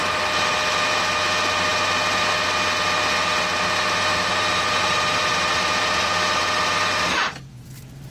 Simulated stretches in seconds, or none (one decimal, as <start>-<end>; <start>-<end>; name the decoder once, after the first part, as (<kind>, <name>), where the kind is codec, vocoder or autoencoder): none